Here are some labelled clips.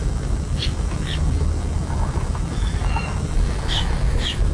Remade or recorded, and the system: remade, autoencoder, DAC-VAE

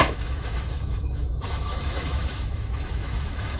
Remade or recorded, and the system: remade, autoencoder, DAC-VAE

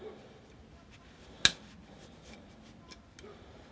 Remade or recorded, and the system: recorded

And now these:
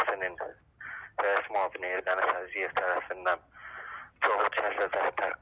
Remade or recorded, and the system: recorded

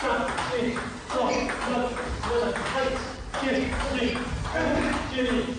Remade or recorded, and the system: recorded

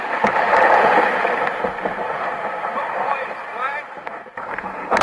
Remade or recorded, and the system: remade, vocoder, BigVGAN v2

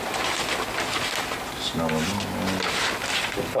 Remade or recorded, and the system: recorded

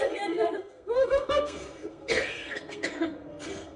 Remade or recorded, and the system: remade, codec, SNAC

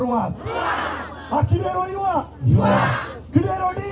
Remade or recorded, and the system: recorded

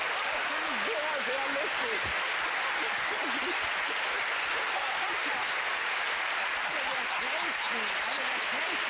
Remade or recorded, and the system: recorded